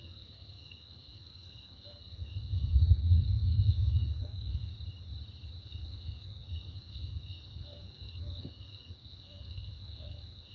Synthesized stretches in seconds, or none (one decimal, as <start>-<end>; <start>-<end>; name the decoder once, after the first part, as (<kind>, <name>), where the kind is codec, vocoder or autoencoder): 0.0-4.7 (codec, SNAC); 5.6-10.5